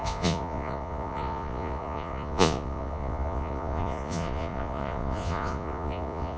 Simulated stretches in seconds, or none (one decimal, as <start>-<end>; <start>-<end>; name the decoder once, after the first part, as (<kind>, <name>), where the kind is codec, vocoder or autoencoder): 0.0-6.4 (vocoder, Vocos)